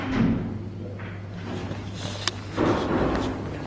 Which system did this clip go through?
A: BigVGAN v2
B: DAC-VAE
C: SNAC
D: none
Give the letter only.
D